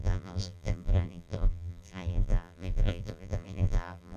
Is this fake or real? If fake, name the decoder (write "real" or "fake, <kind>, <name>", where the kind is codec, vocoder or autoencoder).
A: fake, vocoder, BigVGAN v2